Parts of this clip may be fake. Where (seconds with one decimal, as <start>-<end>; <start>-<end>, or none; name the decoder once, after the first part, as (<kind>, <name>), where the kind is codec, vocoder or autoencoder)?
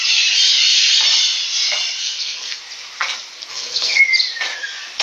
2.0-2.6 (codec, SNAC); 3.5-4.0